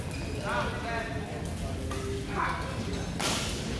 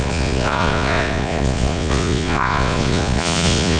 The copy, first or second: second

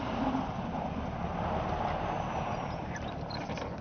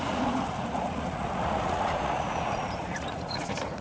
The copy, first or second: second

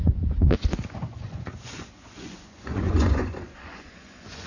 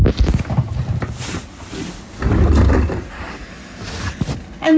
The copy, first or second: first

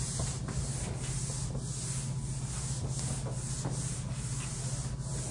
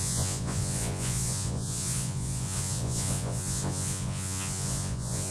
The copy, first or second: second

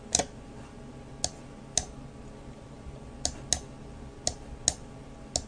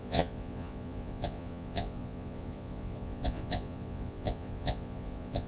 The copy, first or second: second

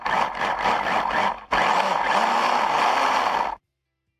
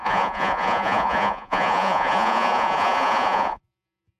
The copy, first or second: second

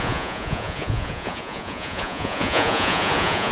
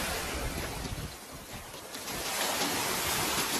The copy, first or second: first